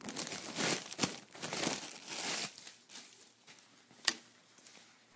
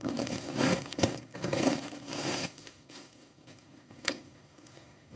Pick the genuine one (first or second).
first